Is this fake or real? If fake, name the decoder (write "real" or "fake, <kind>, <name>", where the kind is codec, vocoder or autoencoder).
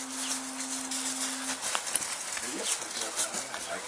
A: real